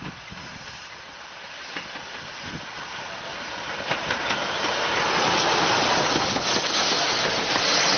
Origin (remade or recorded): recorded